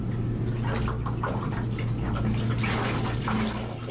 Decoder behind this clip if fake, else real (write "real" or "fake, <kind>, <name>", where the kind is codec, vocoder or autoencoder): real